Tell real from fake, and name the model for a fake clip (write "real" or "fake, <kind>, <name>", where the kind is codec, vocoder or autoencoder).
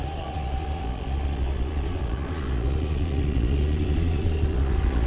fake, vocoder, Vocos